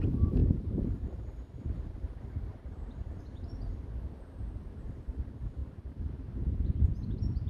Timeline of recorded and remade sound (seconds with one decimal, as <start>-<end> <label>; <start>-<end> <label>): 0.0-7.5 remade